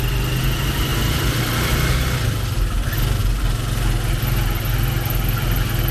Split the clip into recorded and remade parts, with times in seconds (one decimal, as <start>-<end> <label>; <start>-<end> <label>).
0.0-0.9 recorded; 0.9-1.9 remade; 1.9-5.9 recorded